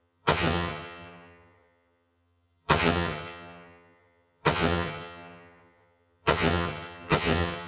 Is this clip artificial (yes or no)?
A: yes